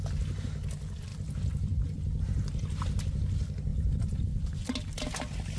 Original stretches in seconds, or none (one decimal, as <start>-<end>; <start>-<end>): 0.0-3.7; 4.2-5.6

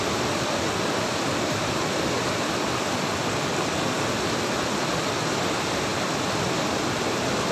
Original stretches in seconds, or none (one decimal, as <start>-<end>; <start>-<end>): 0.0-7.5

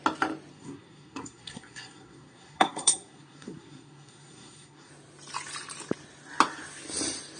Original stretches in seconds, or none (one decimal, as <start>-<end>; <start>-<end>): 0.0-0.5; 4.9-7.4

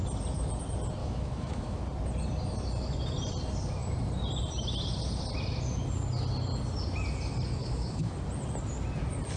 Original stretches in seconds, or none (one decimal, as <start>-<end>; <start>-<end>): 0.0-1.0; 1.8-7.6; 8.1-9.4

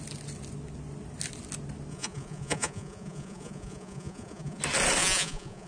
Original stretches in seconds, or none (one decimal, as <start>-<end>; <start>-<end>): 0.0-1.9; 4.6-5.0

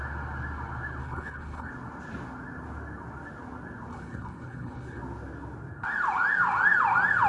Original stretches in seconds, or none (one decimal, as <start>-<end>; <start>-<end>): 0.0-1.0; 1.7-3.9; 5.0-7.3